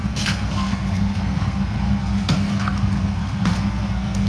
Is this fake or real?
fake